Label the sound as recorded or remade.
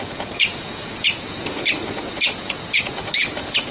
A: remade